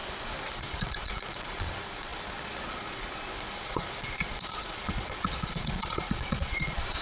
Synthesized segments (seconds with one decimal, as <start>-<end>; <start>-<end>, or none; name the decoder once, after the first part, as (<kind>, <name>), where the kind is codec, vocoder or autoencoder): 0.5-7.0 (vocoder, Vocos)

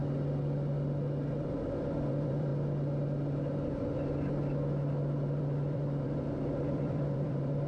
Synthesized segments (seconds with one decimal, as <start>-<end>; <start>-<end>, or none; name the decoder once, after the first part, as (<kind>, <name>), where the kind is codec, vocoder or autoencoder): 1.3-2.5 (vocoder, BigVGAN v2); 5.4-7.7

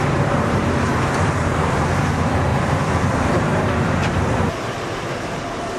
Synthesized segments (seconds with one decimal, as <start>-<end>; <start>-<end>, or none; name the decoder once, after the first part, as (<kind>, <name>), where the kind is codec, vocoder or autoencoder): 0.0-5.8 (vocoder, BigVGAN v2)